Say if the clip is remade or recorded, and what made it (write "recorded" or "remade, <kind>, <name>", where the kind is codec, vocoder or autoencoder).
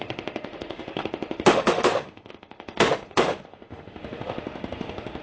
remade, autoencoder, DAC-VAE